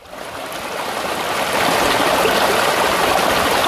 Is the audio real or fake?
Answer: real